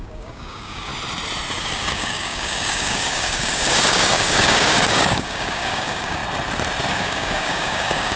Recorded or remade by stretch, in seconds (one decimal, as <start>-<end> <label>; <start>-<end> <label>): 0.0-0.9 remade; 0.9-1.6 recorded; 1.6-6.2 remade; 6.2-6.9 recorded; 6.9-8.2 remade

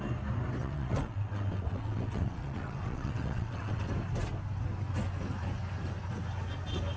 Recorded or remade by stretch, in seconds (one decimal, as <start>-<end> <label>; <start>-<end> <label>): 0.0-0.6 recorded; 0.6-3.9 remade; 3.9-7.0 recorded

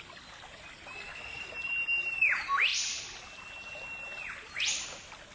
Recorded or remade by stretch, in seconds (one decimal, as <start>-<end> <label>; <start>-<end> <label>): 0.0-1.0 recorded; 1.0-1.5 remade; 1.5-5.3 recorded

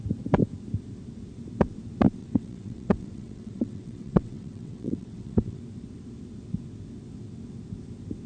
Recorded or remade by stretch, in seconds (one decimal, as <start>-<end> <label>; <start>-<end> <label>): 0.0-2.2 recorded; 2.2-5.6 remade; 5.6-8.3 recorded

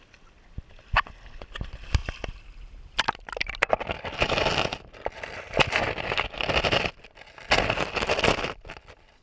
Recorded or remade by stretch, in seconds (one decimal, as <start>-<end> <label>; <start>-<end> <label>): 0.0-9.2 recorded

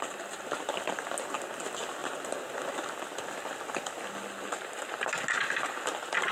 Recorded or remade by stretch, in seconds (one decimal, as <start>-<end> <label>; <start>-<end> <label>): 0.0-6.3 recorded